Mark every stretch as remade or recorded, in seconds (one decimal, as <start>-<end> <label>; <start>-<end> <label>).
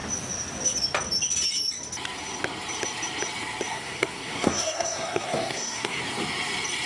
0.0-3.7 recorded; 3.7-6.0 remade; 6.0-6.9 recorded